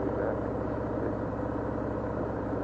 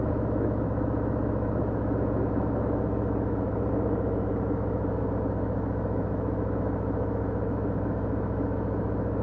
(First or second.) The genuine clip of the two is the first